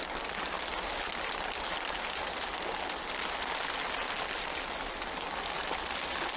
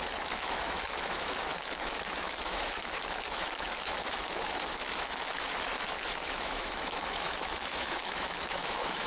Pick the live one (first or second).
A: first